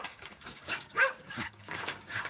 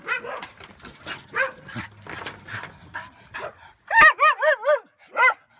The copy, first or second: first